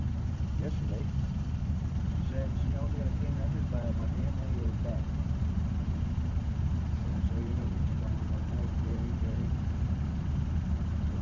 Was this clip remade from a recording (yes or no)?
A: yes